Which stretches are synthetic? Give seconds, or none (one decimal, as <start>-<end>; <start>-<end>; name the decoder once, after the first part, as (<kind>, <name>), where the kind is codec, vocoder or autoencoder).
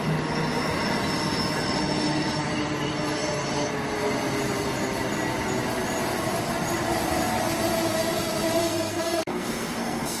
8.6-10.2 (codec, SNAC)